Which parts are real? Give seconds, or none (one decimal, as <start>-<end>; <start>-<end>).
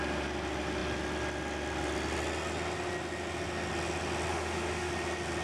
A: 0.0-4.3; 4.9-5.4